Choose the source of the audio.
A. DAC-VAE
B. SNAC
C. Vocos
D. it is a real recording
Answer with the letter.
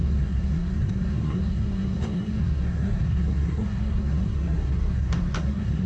B